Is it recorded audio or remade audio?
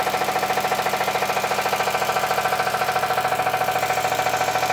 recorded